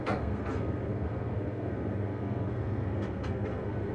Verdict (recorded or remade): remade